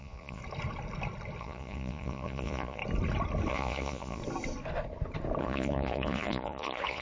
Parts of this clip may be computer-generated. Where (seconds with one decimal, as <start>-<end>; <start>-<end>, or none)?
0.0-0.4; 1.4-2.8; 3.5-4.2; 5.4-7.0